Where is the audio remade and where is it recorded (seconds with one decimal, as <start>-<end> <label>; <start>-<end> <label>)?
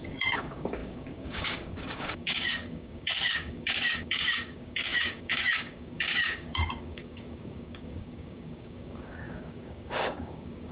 0.0-10.7 remade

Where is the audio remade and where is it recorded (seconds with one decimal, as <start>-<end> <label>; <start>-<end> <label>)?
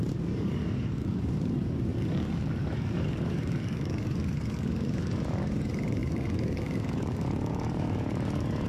0.0-8.7 remade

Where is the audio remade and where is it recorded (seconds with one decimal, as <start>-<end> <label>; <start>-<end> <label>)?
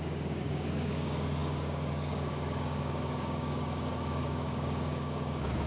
0.0-5.7 remade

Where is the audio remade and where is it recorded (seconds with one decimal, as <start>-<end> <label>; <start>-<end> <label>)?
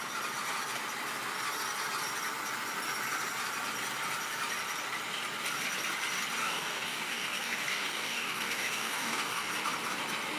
0.0-6.4 recorded; 6.4-9.5 remade; 9.5-10.4 recorded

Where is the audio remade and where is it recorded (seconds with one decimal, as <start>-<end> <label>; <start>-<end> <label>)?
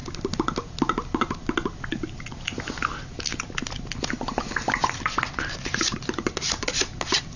0.0-7.4 recorded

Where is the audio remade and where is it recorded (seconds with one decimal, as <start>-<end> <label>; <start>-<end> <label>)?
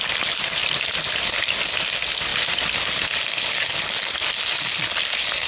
0.0-5.5 recorded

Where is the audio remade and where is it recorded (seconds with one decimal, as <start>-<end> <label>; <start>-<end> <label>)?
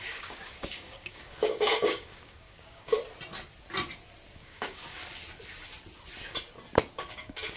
0.0-3.0 remade; 3.0-4.3 recorded; 4.3-5.0 remade; 5.0-6.9 recorded; 6.9-7.6 remade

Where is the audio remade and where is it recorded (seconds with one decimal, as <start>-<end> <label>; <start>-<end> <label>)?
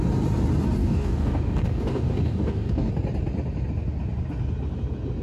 0.0-0.8 recorded; 0.8-2.9 remade; 2.9-5.2 recorded